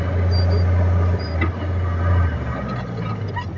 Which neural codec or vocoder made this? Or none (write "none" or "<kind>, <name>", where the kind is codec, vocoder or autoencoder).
none